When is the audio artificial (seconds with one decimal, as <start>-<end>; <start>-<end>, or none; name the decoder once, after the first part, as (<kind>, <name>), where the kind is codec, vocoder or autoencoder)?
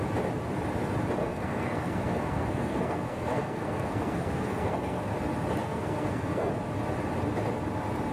1.2-5.1 (codec, SNAC); 5.6-6.5